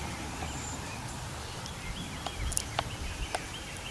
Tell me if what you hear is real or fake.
real